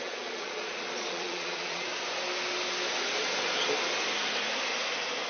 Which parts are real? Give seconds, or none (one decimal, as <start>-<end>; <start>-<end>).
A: 1.9-5.3